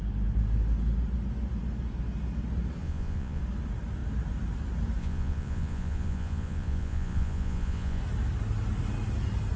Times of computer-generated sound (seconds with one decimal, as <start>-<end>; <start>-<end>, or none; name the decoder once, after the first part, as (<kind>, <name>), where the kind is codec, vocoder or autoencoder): 2.8-3.4 (vocoder, Vocos); 5.0-8.0